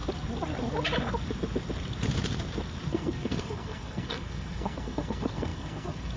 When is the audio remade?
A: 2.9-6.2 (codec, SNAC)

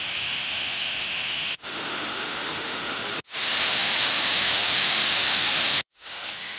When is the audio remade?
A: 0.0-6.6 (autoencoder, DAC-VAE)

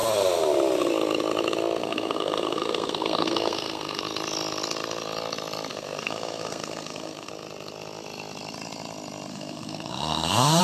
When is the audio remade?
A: 1.8-4.0 (codec, SNAC); 5.7-7.3; 9.3-10.6

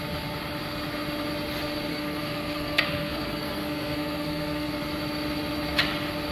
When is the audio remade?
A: 1.9-4.7 (codec, SNAC)

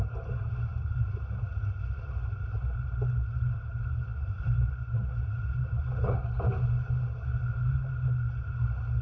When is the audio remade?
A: 4.1-5.8 (vocoder, BigVGAN v2)

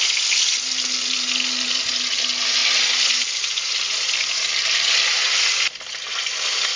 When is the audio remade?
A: none

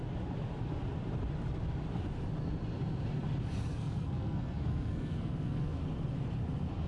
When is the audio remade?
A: 3.7-5.8 (codec, SNAC)